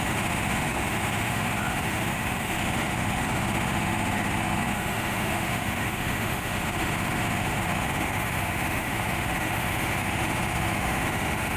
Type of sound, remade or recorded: remade